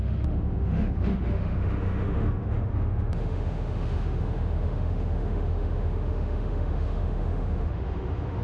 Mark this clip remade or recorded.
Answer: remade